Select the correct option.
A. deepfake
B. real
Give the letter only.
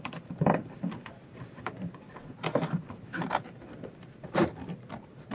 A